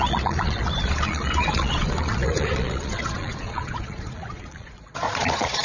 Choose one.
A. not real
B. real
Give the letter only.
A